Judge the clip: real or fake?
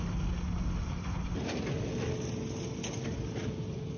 real